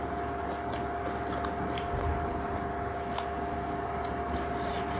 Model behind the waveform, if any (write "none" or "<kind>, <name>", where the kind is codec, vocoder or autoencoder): none